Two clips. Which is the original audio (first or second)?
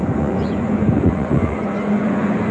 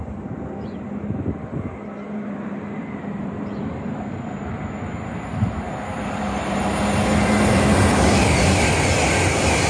second